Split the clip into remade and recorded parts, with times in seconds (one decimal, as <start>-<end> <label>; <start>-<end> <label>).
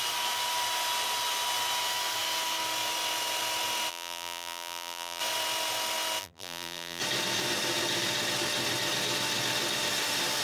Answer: 0.0-3.9 recorded; 3.9-5.2 remade; 5.2-6.2 recorded; 6.2-7.0 remade; 7.0-10.4 recorded